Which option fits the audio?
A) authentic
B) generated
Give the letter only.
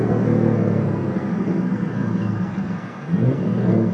B